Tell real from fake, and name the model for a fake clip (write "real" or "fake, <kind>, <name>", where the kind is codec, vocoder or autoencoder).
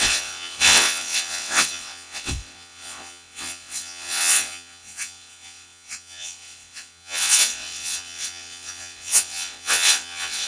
fake, vocoder, WaveNeXt